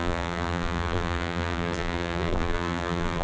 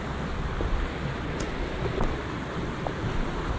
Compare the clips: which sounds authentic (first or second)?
second